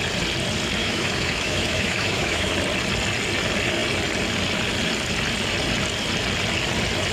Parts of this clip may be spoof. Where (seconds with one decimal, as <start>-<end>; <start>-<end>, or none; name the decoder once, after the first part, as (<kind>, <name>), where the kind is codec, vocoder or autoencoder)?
0.8-2.5 (autoencoder, DAC-VAE)